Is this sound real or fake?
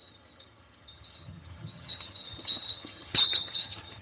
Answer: fake